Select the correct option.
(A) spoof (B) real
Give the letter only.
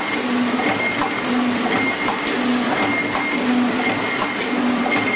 B